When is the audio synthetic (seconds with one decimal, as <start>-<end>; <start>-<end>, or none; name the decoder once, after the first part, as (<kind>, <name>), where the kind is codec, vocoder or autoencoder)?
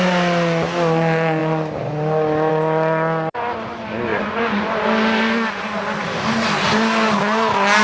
4.1-4.7 (vocoder, Vocos)